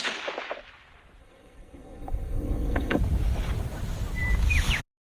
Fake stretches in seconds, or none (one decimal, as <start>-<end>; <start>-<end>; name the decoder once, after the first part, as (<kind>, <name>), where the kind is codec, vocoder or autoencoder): 1.2-3.0 (codec, SNAC)